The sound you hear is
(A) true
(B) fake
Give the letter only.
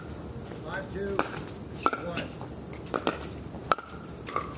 A